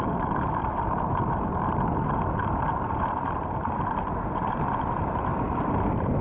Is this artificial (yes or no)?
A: yes